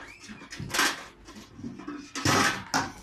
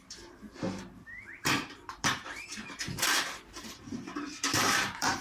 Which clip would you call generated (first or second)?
second